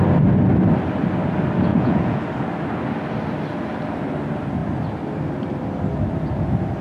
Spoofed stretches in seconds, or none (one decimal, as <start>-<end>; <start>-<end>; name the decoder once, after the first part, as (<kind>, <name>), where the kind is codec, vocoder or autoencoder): 1.7-2.2 (vocoder, Vocos)